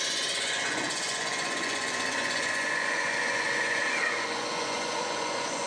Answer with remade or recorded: remade